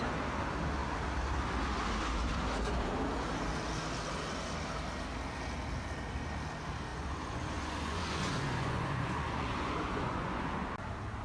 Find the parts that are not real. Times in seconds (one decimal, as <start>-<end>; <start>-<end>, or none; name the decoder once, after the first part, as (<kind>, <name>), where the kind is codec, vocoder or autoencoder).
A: 6.9-10.7 (vocoder, Vocos)